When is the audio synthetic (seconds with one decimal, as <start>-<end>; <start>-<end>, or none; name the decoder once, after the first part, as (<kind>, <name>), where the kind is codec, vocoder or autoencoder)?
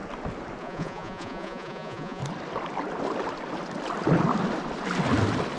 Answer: 0.6-2.2 (vocoder, Vocos)